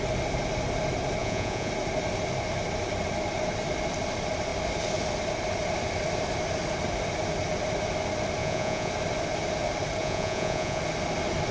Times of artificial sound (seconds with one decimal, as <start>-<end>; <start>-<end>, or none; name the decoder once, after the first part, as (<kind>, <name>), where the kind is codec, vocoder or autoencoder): 1.2-1.7 (vocoder, Vocos); 8.4-8.9; 10.0-10.8